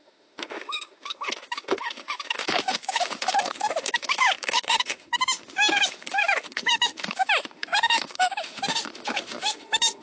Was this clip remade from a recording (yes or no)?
yes